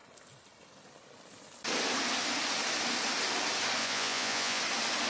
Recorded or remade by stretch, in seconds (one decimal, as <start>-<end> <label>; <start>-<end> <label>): 0.0-3.8 recorded; 3.8-4.6 remade; 4.6-5.1 recorded